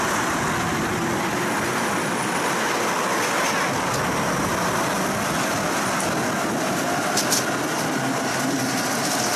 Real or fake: real